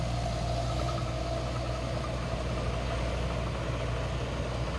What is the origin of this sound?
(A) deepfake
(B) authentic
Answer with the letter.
B